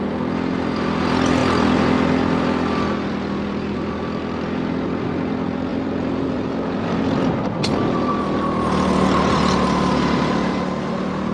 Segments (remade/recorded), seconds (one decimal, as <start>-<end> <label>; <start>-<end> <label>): 0.0-5.7 recorded; 5.7-7.0 remade; 7.0-11.3 recorded